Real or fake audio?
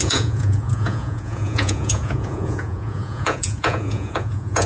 fake